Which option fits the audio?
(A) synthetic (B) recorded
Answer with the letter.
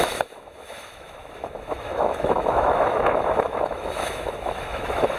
A